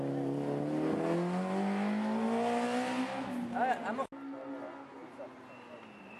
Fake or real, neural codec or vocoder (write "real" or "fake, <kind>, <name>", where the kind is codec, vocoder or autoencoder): real